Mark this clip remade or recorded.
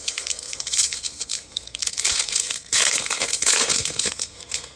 remade